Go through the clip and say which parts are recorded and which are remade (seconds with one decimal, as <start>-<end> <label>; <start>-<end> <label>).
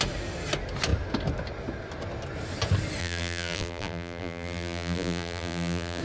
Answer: 0.0-3.0 recorded; 3.0-6.0 remade